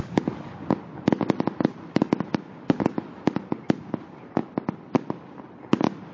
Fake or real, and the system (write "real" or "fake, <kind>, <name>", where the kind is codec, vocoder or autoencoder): real